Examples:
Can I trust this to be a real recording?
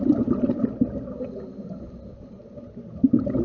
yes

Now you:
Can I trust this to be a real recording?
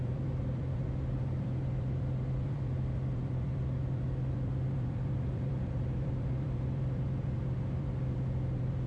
no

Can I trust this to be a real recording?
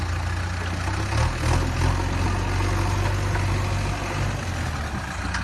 yes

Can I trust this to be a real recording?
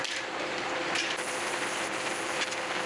no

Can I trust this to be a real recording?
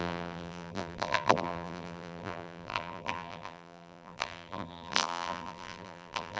no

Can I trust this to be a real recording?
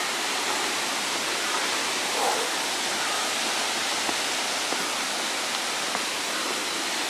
yes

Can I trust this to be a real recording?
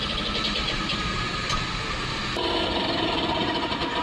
no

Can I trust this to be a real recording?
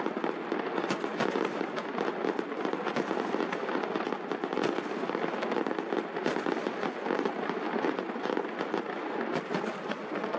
yes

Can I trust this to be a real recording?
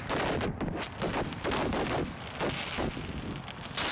yes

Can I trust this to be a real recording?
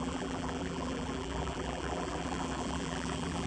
no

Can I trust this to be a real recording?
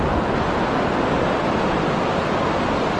yes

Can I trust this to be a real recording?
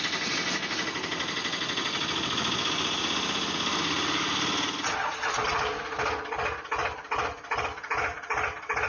yes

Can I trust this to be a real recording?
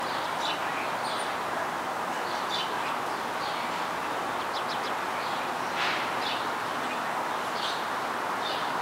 yes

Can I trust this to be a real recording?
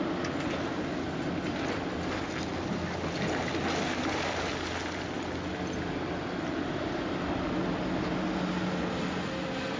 yes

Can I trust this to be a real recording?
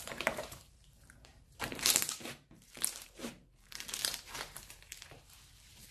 no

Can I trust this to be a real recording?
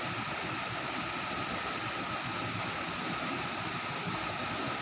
yes